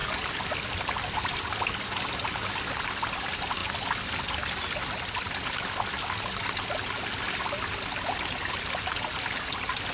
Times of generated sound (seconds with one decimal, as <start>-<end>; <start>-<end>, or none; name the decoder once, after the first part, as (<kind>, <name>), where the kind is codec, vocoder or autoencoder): none